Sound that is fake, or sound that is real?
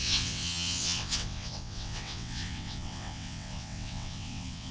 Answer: fake